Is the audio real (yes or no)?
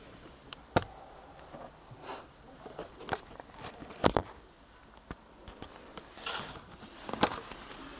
no